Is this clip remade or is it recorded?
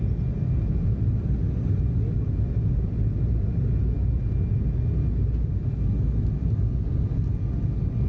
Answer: recorded